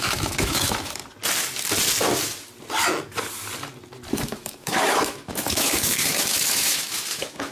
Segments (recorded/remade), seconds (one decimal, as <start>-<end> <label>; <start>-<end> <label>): 0.0-1.0 remade; 1.0-4.1 recorded; 4.1-7.5 remade